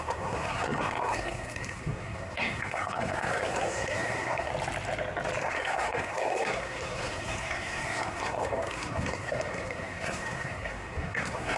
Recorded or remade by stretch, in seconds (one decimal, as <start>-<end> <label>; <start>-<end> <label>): 0.0-4.5 remade; 4.5-5.4 recorded; 5.4-11.6 remade